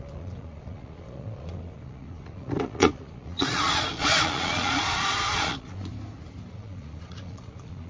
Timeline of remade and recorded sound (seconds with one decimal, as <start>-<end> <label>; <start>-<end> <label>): 0.0-5.9 remade; 5.9-6.5 recorded; 6.5-7.9 remade